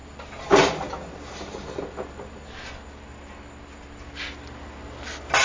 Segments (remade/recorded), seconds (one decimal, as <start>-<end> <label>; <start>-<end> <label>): 0.0-5.4 recorded